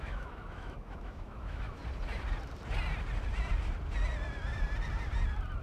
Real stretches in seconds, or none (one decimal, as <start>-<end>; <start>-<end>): 1.8-5.6